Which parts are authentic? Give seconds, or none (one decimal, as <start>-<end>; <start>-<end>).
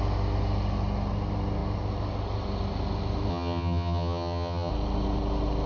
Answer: 0.0-3.3; 4.7-5.7